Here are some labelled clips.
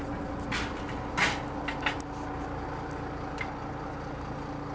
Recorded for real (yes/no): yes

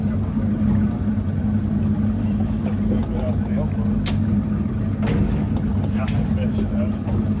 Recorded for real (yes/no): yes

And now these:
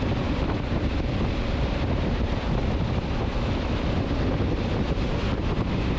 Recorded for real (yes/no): no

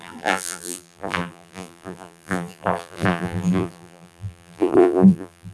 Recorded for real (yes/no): no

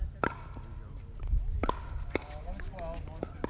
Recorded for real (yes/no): yes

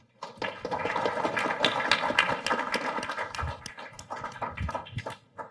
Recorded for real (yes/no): yes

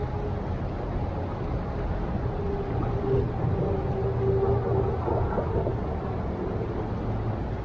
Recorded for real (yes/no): yes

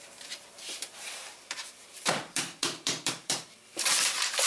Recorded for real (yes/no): no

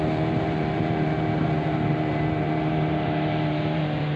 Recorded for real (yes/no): no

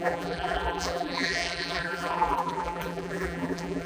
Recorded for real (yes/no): no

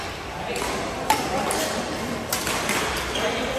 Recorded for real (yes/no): yes